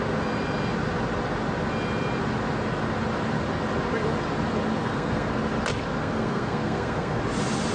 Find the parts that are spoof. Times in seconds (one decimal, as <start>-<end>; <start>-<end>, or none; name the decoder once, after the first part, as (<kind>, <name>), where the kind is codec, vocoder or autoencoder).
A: 4.8-5.3 (codec, SNAC); 6.0-7.2